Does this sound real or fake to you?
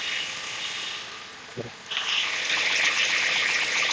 real